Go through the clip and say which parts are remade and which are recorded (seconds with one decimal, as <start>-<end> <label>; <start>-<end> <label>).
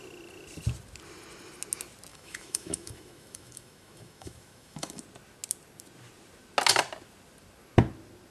0.0-2.1 recorded; 2.1-5.0 remade; 5.0-8.3 recorded